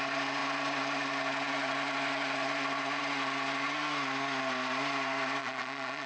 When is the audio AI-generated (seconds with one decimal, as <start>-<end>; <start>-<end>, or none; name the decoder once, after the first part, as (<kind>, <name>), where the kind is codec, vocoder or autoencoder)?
5.4-6.1 (vocoder, Vocos)